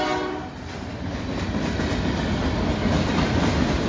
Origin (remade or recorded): recorded